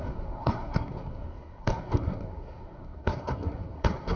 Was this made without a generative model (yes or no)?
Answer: no